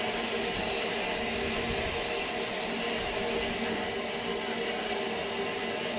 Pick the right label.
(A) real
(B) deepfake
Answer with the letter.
A